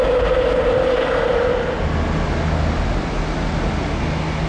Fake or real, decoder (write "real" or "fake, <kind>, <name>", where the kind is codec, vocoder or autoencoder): real